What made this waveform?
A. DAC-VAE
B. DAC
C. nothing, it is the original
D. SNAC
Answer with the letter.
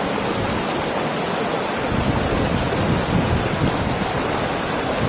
C